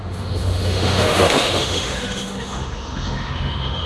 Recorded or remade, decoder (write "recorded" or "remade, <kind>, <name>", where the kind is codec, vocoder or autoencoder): remade, autoencoder, DAC-VAE